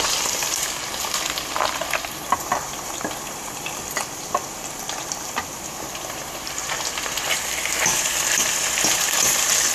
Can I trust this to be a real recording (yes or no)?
no